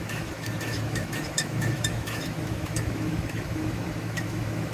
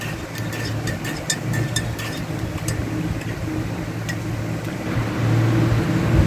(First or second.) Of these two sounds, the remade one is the first